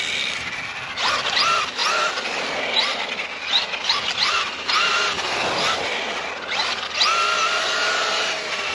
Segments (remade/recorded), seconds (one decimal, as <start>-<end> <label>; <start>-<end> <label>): 0.0-8.7 recorded

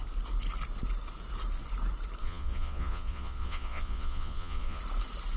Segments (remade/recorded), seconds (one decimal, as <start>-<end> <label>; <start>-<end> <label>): 0.0-2.2 recorded; 2.2-4.8 remade; 4.8-5.4 recorded

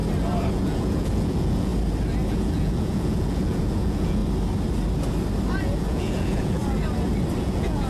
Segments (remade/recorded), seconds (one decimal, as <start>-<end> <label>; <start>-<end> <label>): 0.0-0.5 recorded; 0.5-1.7 remade; 1.7-2.3 recorded; 2.3-4.2 remade; 4.2-5.6 recorded; 5.6-6.6 remade; 6.6-7.4 recorded; 7.4-7.9 remade

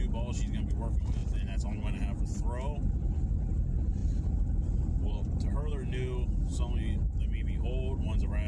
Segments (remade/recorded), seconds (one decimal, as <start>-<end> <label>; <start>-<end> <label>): 0.0-8.5 recorded

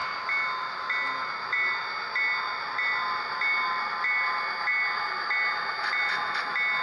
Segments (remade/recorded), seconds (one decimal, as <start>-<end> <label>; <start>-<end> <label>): 0.0-6.8 recorded